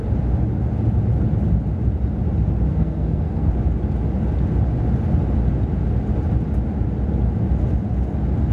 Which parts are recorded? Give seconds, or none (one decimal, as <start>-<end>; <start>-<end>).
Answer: 0.0-2.7; 3.5-8.5